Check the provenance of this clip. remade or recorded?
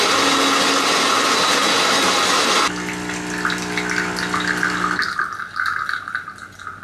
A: recorded